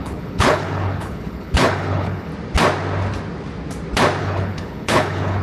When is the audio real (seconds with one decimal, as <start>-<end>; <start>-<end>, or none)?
2.3-4.2